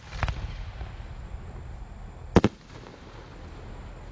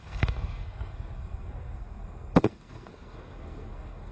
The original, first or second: first